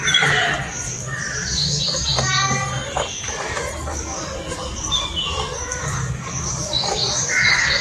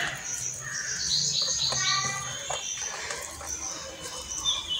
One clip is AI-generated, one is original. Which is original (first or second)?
second